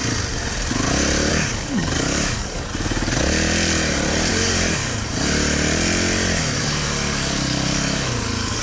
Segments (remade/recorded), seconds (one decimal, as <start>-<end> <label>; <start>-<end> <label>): 0.0-1.3 recorded; 1.3-2.7 remade; 2.7-4.3 recorded; 4.3-4.8 remade; 4.8-6.6 recorded; 6.6-8.6 remade